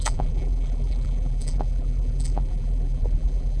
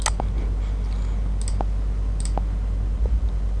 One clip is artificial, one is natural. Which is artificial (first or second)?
first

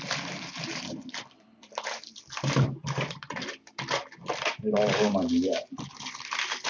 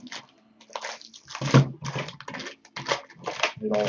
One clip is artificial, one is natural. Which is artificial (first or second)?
first